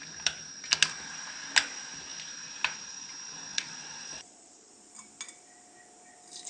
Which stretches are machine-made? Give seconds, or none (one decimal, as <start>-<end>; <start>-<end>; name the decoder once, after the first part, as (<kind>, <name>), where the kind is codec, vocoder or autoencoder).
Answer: 3.5-4.7 (vocoder, Vocos)